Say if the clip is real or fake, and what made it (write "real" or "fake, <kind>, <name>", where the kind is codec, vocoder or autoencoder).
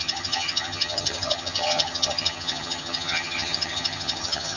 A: fake, vocoder, HiFi-GAN